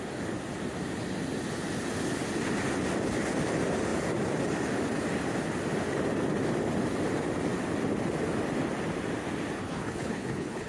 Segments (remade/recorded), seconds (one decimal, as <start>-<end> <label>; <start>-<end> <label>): 0.0-9.6 recorded; 9.6-10.7 remade